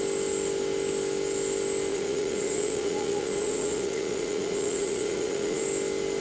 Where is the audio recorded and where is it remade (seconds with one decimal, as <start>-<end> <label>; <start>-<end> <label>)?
0.0-1.9 recorded; 1.9-5.6 remade; 5.6-6.2 recorded